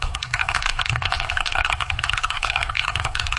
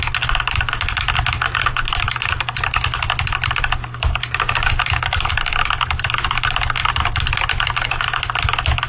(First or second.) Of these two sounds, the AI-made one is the first